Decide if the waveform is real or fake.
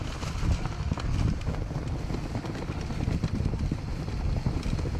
real